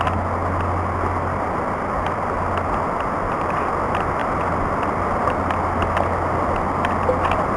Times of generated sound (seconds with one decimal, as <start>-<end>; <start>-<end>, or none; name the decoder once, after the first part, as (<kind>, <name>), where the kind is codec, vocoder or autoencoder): none